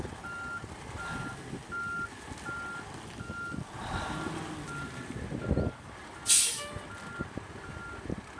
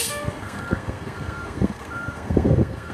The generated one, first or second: second